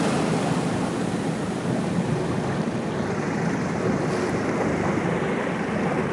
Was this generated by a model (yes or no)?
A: no